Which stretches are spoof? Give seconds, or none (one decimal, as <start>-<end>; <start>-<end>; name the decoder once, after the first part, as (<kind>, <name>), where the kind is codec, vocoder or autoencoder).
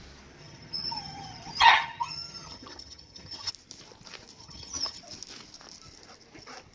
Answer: 0.4-3.5 (vocoder, HiFi-GAN); 4.4-5.0